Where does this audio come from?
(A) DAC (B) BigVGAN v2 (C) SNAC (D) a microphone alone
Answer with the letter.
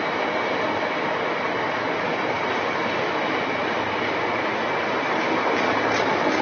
D